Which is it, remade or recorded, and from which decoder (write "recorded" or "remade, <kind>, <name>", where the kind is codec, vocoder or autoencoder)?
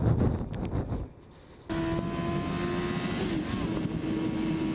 recorded